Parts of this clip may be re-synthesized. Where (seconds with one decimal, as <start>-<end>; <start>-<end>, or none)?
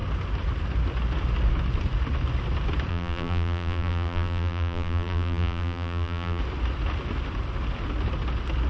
2.9-6.4